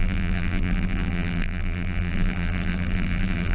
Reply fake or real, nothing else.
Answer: fake